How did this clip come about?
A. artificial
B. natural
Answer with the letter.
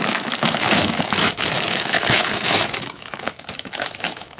A